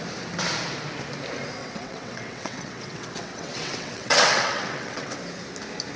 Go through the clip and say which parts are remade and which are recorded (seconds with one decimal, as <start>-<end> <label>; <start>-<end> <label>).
0.0-1.6 recorded; 1.6-5.2 remade; 5.2-6.0 recorded

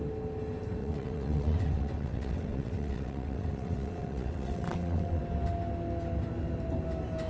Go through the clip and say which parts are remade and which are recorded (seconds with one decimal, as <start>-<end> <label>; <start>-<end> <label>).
0.0-0.8 recorded; 0.8-5.2 remade; 5.2-7.3 recorded

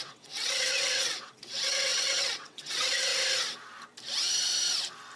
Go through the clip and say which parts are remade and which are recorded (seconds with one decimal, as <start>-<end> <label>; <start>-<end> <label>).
0.0-3.1 remade; 3.1-5.2 recorded

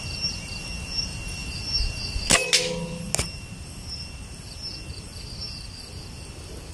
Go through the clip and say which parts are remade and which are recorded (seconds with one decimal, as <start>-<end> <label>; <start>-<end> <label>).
0.0-6.7 recorded

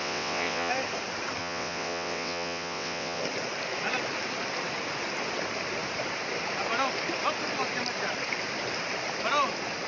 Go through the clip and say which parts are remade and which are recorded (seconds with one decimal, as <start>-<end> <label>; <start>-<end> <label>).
0.0-0.7 remade; 0.7-1.4 recorded; 1.4-3.2 remade; 3.2-9.9 recorded

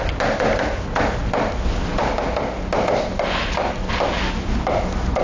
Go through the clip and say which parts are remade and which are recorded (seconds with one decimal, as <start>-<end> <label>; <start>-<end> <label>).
0.0-5.2 recorded

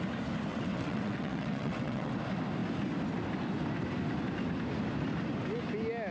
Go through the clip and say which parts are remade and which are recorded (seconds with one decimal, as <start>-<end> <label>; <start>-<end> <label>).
0.0-0.5 recorded; 0.5-2.1 remade; 2.1-6.1 recorded

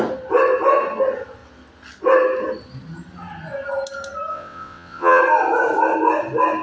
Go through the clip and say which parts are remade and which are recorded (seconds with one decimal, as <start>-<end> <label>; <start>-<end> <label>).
0.0-4.3 recorded; 4.3-5.2 remade; 5.2-6.6 recorded